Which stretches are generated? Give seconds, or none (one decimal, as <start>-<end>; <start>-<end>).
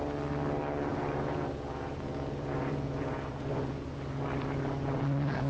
0.9-4.0